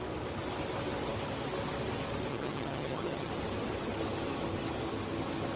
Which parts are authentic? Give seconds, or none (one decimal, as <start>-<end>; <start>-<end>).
0.0-2.3; 3.3-5.6